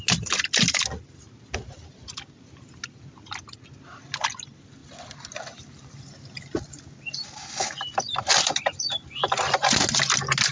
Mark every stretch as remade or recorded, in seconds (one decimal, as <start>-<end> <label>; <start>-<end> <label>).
0.0-10.5 recorded